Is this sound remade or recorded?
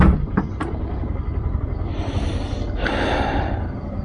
recorded